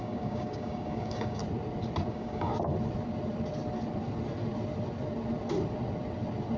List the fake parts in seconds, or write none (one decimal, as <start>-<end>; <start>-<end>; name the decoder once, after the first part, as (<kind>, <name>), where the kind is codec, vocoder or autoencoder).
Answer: 0.0-1.4 (codec, DAC); 2.1-2.5